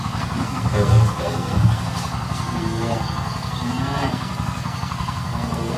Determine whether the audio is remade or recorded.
remade